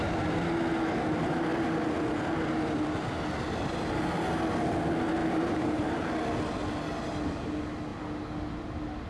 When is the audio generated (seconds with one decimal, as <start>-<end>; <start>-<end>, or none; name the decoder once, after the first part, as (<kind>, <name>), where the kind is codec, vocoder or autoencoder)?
5.2-6.1 (vocoder, BigVGAN v2)